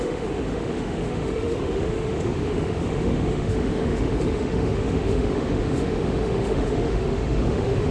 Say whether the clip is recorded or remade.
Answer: remade